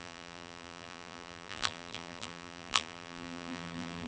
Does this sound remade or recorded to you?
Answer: remade